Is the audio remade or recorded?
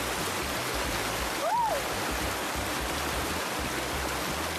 recorded